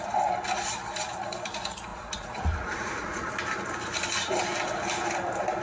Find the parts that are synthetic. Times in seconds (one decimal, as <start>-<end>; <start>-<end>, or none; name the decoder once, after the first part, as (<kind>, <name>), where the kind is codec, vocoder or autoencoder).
1.9-3.3 (vocoder, Vocos)